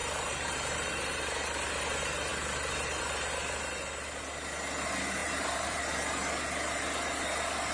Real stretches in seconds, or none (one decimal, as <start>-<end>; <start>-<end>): 1.2-5.2; 5.8-7.7